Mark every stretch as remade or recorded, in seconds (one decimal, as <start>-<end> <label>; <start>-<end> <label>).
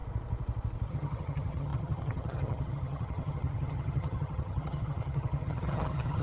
0.0-0.9 recorded; 0.9-6.2 remade